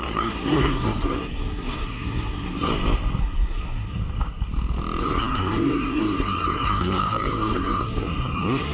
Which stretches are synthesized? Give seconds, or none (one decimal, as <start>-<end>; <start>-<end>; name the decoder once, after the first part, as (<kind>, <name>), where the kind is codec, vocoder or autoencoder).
0.0-2.7 (codec, SNAC); 3.2-4.0; 5.0-8.7